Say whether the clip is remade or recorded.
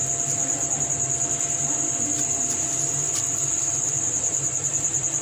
recorded